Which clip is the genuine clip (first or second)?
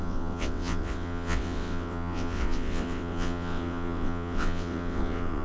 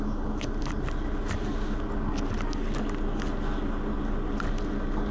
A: second